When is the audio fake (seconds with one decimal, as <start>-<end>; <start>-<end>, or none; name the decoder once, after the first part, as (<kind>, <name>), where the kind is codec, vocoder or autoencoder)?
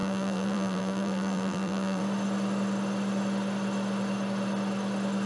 0.0-2.0 (vocoder, BigVGAN v2)